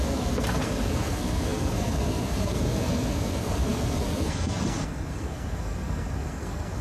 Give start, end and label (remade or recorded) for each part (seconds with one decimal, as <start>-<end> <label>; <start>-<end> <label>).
0.0-6.8 remade